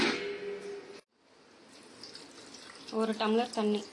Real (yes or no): yes